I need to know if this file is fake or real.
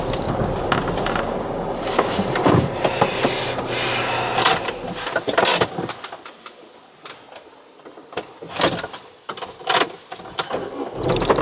real